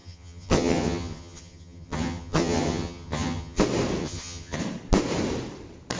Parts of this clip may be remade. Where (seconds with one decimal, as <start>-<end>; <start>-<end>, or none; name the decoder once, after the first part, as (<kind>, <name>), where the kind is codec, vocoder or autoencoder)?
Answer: 0.0-3.6 (vocoder, HiFi-GAN); 4.0-4.6